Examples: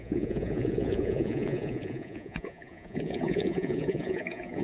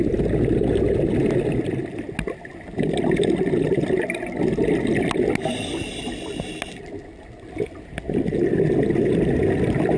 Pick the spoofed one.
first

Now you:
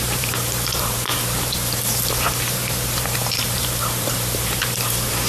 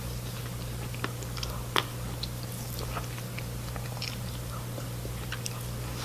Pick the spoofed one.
first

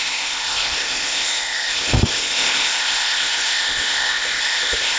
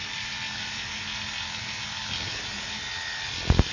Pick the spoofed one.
first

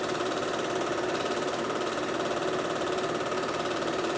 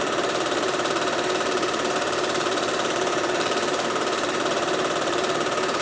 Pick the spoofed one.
second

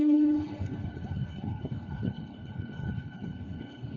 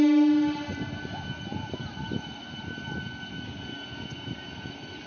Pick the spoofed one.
first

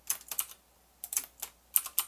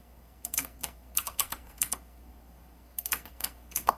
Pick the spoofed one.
second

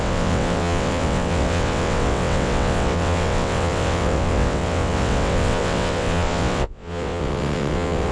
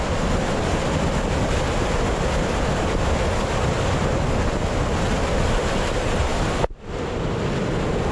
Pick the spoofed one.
first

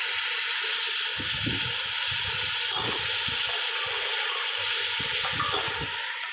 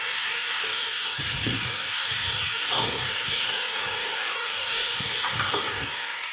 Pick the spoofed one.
second